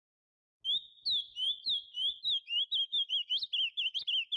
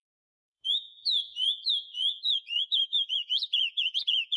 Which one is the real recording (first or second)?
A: first